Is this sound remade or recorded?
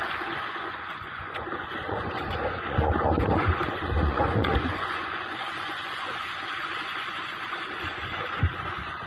remade